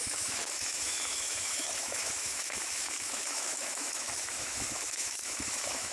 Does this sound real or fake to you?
fake